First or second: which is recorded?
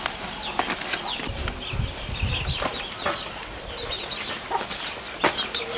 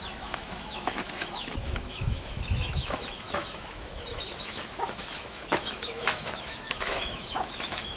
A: first